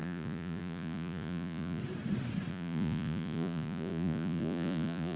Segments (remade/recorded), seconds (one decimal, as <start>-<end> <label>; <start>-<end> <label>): 0.0-1.8 remade; 1.8-2.5 recorded; 2.5-5.2 remade